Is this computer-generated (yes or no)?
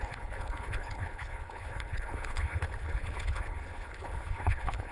yes